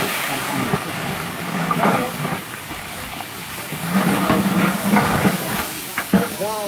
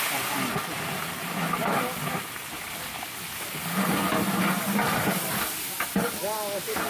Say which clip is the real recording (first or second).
second